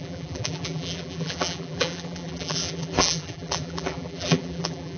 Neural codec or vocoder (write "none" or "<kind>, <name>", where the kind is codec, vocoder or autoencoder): vocoder, BigVGAN v2